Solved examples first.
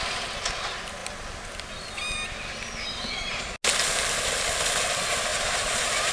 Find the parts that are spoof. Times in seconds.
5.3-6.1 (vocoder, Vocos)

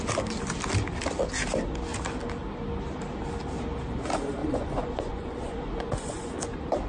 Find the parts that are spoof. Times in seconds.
4.4-6.3 (vocoder, Vocos)

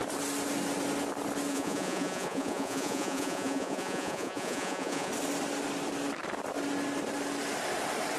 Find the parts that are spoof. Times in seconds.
1.5-5.1 (vocoder, Vocos)